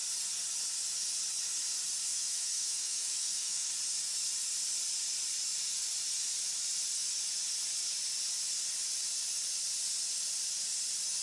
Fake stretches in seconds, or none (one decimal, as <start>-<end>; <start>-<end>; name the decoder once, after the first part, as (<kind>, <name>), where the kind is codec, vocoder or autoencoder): 2.1-3.7 (autoencoder, DAC-VAE)

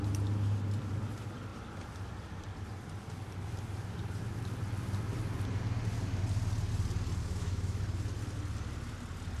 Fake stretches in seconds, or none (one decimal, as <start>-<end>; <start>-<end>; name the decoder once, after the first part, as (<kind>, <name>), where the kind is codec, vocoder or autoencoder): 7.2-7.8 (autoencoder, DAC-VAE)

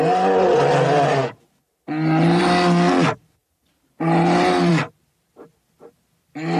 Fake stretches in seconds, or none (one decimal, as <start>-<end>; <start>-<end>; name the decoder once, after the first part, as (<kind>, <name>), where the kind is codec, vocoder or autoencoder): none

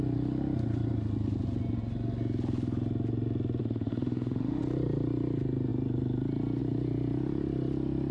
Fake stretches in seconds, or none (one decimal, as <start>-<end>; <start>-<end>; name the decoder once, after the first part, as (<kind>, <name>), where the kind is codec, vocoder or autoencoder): 3.6-4.6 (autoencoder, DAC-VAE)

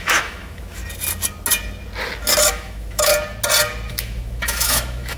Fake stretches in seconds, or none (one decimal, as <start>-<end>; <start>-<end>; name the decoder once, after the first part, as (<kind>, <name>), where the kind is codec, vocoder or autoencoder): 0.0-0.8 (autoencoder, DAC-VAE); 2.5-3.1; 3.9-5.2

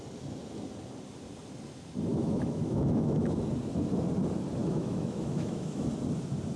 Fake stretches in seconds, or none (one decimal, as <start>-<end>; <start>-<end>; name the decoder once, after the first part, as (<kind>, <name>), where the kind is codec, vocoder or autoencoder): 2.1-3.4 (autoencoder, DAC-VAE); 4.6-5.9